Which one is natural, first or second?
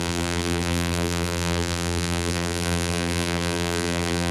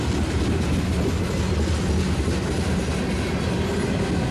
second